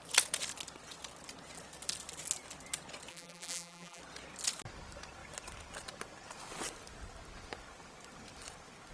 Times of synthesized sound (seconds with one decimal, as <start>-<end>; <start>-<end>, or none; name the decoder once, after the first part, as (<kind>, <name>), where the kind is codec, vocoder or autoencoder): 3.1-4.0 (vocoder, BigVGAN v2)